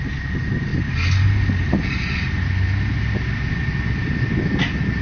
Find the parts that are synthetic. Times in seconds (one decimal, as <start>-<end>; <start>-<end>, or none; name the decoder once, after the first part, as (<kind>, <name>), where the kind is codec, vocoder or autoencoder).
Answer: none